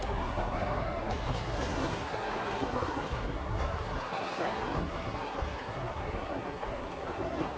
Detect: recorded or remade remade